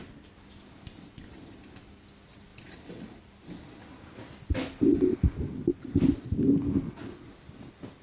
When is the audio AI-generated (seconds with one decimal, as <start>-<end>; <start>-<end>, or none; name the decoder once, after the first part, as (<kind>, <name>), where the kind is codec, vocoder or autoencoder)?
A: none